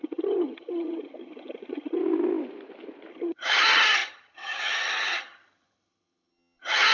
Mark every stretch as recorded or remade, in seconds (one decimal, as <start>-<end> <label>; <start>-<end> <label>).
0.0-2.0 remade; 2.0-3.1 recorded; 3.1-6.9 remade